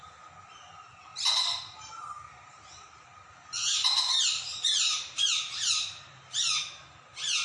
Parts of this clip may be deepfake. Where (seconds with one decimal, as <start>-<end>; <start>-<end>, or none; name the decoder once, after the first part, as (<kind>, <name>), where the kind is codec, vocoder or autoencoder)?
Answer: 1.1-1.9 (vocoder, BigVGAN v2); 3.8-6.4